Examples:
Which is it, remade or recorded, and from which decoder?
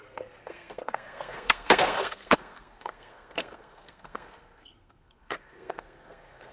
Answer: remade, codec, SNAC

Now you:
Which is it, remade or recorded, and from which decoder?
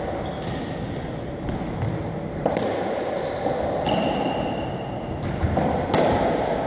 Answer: recorded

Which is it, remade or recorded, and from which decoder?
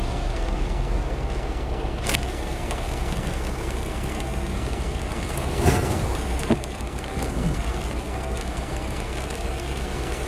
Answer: remade, codec, SNAC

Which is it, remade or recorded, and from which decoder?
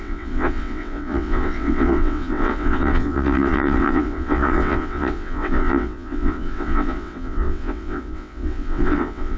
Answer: remade, vocoder, WaveNeXt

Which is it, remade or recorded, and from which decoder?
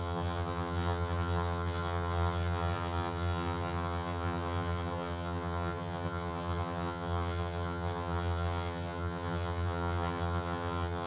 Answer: remade, vocoder, HiFi-GAN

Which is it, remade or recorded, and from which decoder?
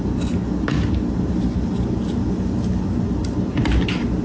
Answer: recorded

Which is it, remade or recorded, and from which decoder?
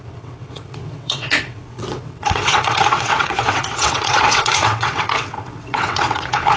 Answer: remade, vocoder, WaveNeXt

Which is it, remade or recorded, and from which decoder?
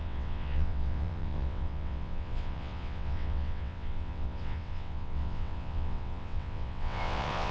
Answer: remade, vocoder, WaveNeXt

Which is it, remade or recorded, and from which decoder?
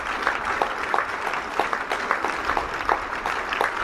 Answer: recorded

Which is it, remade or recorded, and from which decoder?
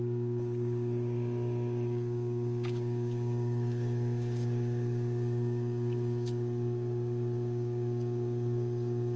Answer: remade, codec, DAC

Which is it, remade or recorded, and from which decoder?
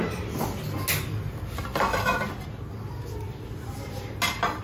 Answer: recorded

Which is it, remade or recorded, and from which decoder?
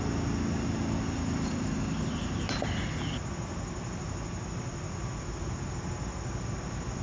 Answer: recorded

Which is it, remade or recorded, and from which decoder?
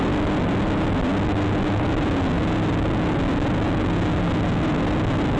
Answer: recorded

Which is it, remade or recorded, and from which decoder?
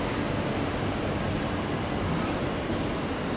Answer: recorded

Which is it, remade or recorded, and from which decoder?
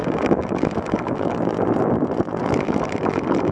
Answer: remade, vocoder, BigVGAN v2